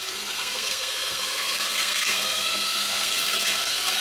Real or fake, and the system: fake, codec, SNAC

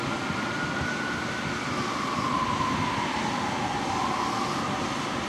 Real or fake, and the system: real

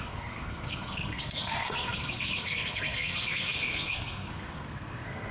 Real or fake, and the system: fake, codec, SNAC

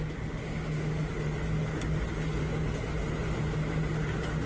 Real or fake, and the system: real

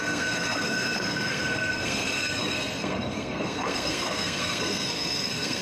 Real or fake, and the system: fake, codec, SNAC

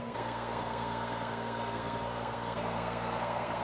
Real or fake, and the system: fake, codec, SNAC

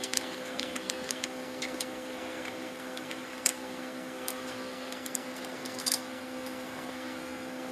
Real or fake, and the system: fake, codec, SNAC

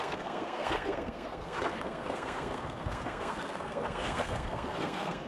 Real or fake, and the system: fake, codec, SNAC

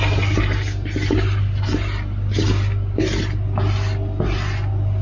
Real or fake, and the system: real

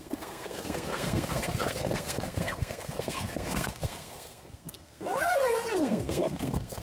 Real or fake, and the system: fake, codec, SNAC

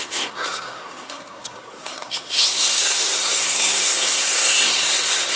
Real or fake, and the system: fake, codec, SNAC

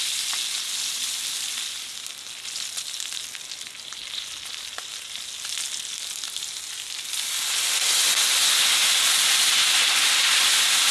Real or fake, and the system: real